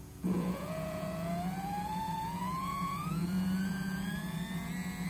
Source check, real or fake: fake